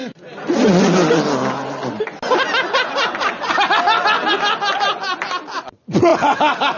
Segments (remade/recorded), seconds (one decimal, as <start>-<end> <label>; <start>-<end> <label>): 0.0-6.8 recorded